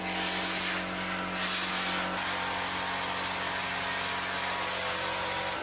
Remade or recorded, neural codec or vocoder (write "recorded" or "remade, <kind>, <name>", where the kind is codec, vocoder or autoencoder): recorded